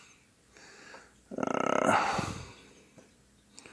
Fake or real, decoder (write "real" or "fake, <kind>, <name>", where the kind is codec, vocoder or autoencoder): real